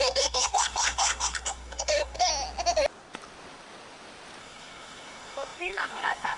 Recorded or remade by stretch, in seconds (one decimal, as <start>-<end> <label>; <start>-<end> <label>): 0.0-2.3 remade; 2.3-4.4 recorded; 4.4-6.4 remade